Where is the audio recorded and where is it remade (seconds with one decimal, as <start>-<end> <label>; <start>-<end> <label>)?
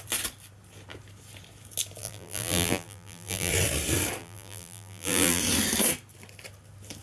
0.0-2.0 recorded; 2.0-3.5 remade; 3.5-4.2 recorded; 4.2-5.4 remade; 5.4-7.0 recorded